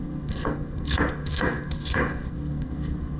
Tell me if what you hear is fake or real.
fake